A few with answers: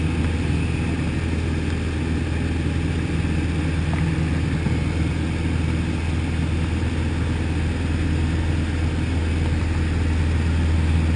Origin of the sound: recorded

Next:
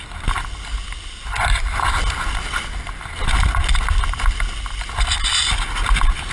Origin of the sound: recorded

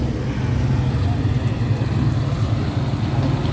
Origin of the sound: recorded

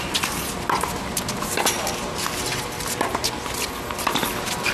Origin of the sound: recorded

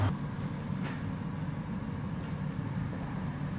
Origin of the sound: recorded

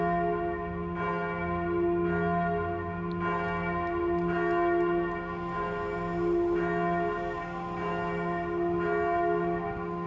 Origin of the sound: recorded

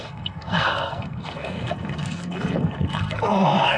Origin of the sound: remade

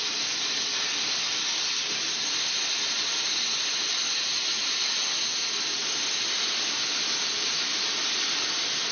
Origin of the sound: recorded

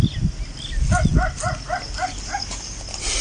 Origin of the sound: recorded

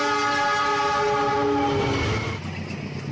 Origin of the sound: recorded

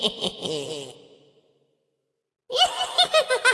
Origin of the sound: recorded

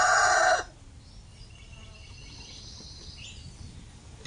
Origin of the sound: recorded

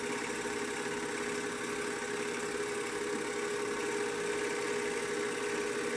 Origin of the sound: recorded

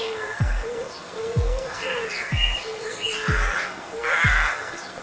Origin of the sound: remade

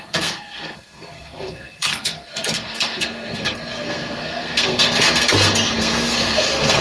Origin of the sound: remade